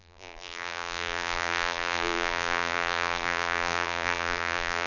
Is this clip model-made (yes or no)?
yes